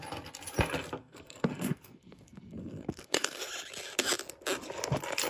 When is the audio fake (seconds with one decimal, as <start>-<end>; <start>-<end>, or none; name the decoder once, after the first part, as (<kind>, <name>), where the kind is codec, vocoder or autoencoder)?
1.0-3.5 (codec, SNAC)